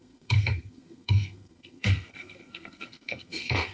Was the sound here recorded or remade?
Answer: remade